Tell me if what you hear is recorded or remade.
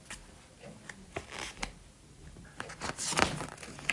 recorded